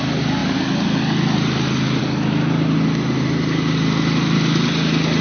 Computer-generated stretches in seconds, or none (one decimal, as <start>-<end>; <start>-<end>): none